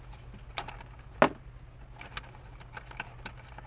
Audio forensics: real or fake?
real